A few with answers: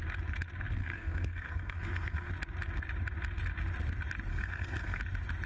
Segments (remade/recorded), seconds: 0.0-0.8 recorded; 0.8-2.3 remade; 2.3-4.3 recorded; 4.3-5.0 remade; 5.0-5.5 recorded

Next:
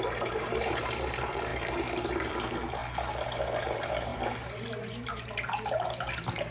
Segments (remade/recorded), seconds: 0.0-2.8 remade; 2.8-3.6 recorded; 3.6-6.5 remade

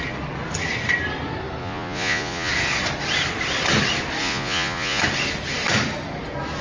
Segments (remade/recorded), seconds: 0.0-1.6 recorded; 1.6-2.5 remade; 2.5-4.2 recorded; 4.2-5.0 remade; 5.0-6.6 recorded

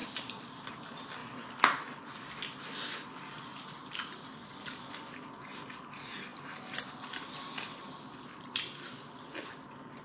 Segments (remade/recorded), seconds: 0.0-10.0 recorded

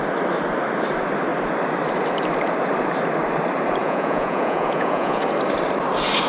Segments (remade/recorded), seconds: 0.0-3.8 recorded; 3.8-5.2 remade; 5.2-6.3 recorded

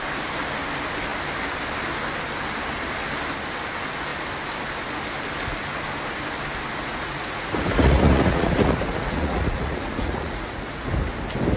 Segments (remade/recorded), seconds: 0.0-6.8 recorded; 6.8-10.9 remade; 10.9-11.6 recorded